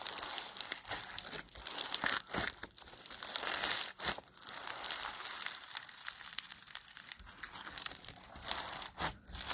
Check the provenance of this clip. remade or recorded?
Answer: recorded